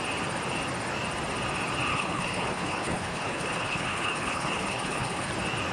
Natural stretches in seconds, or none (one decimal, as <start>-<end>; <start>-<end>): 0.0-1.9; 5.3-5.7